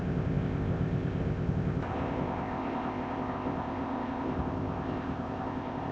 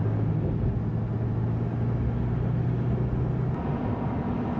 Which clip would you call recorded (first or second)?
second